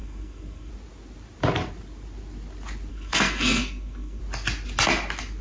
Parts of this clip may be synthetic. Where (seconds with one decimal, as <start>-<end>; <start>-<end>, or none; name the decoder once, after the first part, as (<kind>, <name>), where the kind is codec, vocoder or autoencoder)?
0.0-0.7 (codec, SNAC); 2.9-4.2